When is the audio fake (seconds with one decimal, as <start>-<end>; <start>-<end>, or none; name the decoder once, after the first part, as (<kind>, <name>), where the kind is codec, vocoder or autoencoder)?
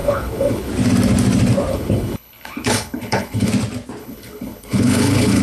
0.0-0.7 (codec, HILCodec); 1.7-3.5; 4.0-5.4